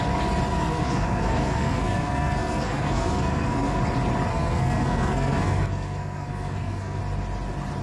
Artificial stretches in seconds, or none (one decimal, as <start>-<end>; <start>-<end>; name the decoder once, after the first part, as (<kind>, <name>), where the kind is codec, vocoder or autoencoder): 0.5-3.8 (codec, SNAC); 4.3-7.0